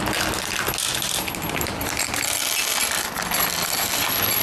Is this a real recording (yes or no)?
yes